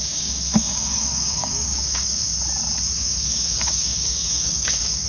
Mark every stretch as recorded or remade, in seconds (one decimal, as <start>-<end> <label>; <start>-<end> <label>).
0.0-2.3 remade; 2.3-2.9 recorded; 2.9-5.1 remade